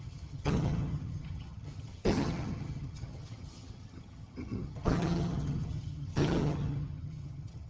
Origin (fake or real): fake